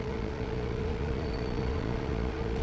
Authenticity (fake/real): fake